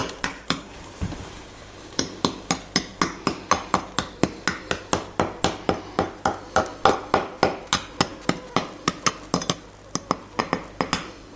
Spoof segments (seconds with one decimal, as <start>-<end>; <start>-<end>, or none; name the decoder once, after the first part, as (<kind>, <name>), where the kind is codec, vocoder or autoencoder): 0.0-2.0 (vocoder, BigVGAN v2)